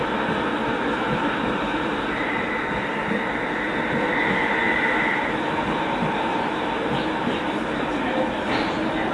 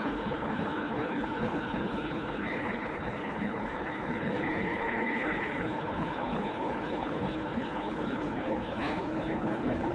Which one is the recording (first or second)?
first